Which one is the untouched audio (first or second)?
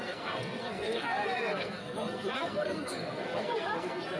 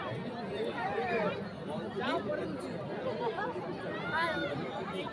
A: second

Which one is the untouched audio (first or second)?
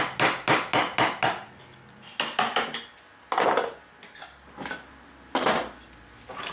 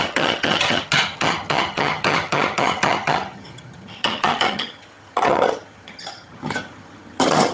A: first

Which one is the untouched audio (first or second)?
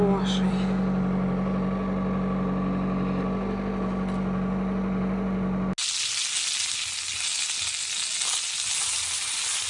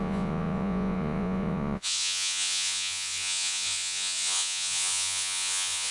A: first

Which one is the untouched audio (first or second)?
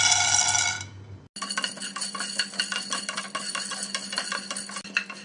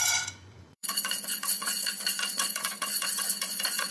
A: first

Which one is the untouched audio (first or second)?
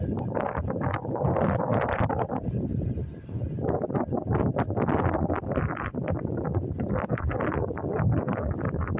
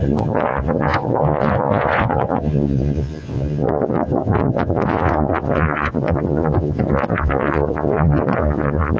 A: first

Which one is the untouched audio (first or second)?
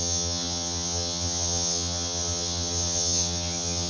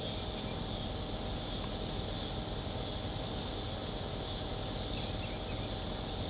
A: second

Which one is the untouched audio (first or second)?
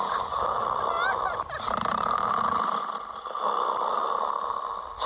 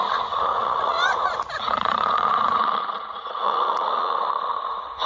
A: first